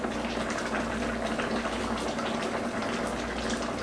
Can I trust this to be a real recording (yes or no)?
yes